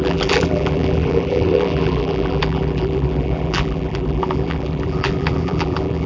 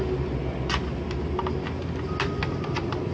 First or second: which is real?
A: second